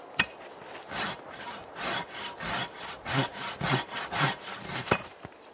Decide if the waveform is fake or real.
fake